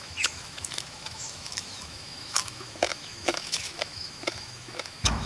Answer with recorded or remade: remade